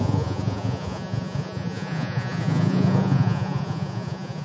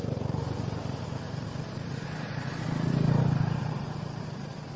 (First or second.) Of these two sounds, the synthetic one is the first